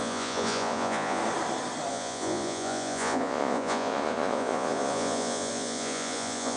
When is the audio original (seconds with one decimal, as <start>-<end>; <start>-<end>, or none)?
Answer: 1.2-1.9